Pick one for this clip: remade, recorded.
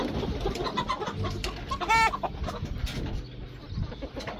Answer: recorded